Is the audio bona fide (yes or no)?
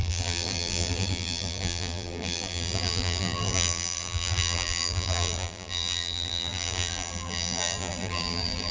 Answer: no